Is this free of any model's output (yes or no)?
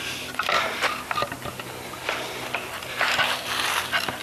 yes